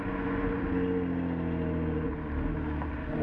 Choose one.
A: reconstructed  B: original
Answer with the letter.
B